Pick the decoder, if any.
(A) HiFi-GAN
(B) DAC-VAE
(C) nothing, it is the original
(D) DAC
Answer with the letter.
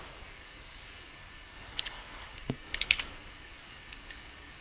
D